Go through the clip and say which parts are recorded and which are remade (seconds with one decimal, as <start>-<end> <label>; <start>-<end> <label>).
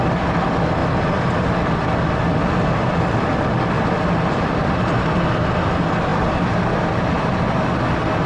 0.0-8.3 recorded